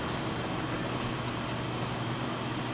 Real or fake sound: real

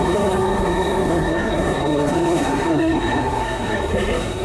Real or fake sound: fake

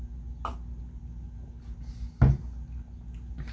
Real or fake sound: real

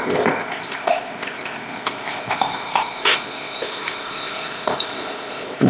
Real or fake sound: fake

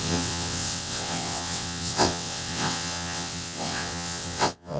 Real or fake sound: fake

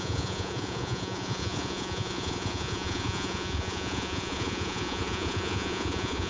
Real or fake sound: fake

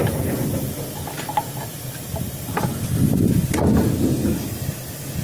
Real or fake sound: real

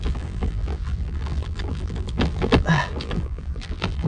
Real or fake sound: fake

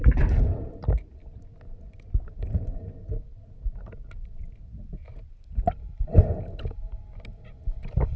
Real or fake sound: real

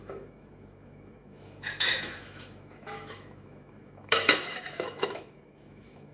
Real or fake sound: fake